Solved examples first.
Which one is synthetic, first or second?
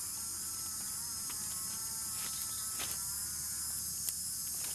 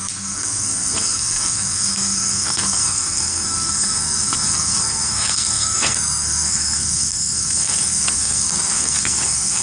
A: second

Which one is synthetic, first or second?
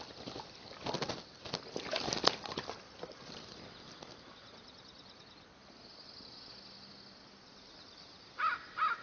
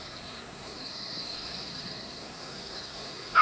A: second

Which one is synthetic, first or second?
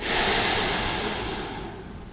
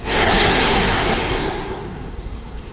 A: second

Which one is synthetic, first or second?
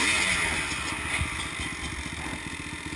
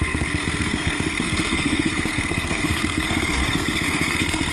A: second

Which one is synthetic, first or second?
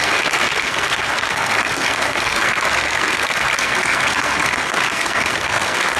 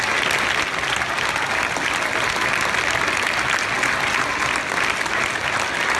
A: first